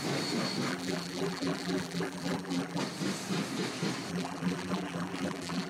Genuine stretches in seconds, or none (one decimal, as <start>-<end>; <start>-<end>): 0.0-0.7; 2.8-4.1

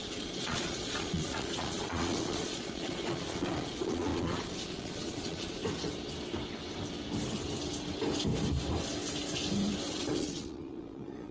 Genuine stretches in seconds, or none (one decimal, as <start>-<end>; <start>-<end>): 5.6-9.9

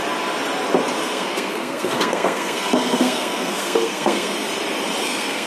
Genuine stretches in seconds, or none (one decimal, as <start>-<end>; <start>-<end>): 0.0-1.0; 4.3-5.0

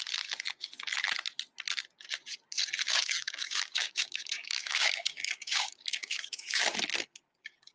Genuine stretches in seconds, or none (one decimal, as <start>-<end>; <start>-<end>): 0.0-2.9; 6.6-7.7